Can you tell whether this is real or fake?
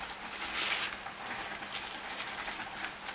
real